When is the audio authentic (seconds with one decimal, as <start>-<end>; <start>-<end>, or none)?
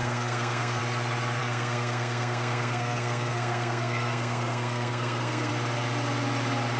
0.8-1.4; 5.5-6.8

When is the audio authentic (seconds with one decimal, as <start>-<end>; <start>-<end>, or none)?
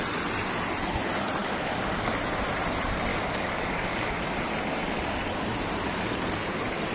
0.0-1.4; 2.1-3.1; 4.2-6.9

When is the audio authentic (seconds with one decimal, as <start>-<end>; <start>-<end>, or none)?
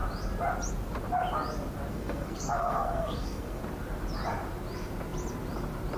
0.0-1.9; 3.6-6.0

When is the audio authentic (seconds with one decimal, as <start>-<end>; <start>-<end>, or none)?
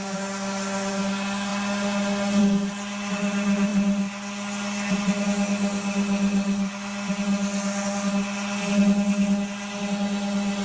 0.0-10.6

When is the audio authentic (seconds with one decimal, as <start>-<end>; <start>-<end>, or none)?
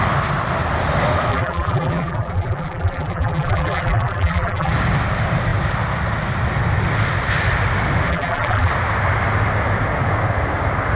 0.0-1.3; 4.7-8.1; 8.7-11.0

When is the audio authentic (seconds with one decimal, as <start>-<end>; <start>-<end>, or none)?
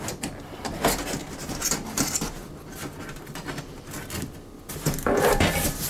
0.0-5.9